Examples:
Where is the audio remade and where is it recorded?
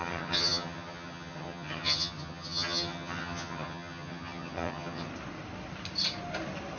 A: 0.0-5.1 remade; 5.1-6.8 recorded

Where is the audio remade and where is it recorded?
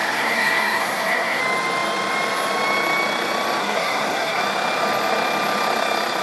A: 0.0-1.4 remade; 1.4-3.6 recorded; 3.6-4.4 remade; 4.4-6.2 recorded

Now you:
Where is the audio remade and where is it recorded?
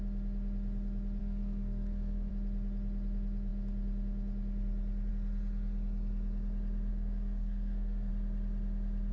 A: 0.0-1.2 recorded; 1.2-2.3 remade; 2.3-6.9 recorded; 6.9-8.1 remade; 8.1-9.1 recorded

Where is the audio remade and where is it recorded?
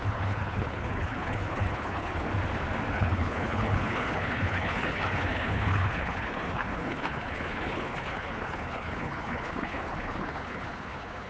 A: 0.0-2.3 remade; 2.3-2.9 recorded; 2.9-11.3 remade